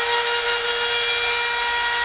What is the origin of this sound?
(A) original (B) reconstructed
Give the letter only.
A